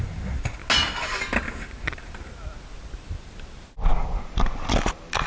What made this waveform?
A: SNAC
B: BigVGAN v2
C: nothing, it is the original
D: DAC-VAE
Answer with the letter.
C